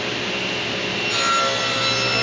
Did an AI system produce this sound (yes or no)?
no